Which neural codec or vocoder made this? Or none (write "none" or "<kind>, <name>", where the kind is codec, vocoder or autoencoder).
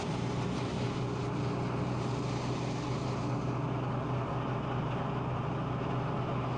none